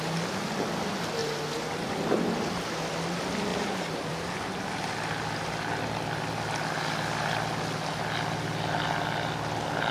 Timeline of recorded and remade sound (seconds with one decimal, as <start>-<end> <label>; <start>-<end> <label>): 0.0-3.5 recorded; 3.5-4.1 remade; 4.1-9.9 recorded